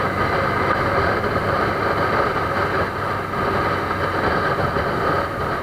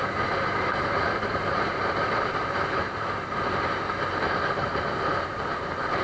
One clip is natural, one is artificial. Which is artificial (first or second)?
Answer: second